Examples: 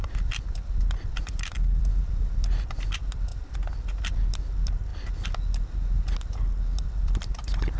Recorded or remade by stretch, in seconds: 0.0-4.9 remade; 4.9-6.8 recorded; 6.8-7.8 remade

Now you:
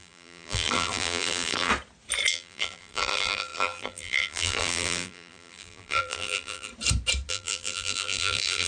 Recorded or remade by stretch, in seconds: 0.0-1.7 remade; 1.7-2.3 recorded; 2.3-6.7 remade; 6.7-7.3 recorded; 7.3-8.7 remade